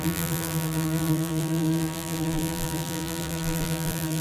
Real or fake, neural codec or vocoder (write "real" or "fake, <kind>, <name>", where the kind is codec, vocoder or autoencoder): fake, vocoder, BigVGAN v2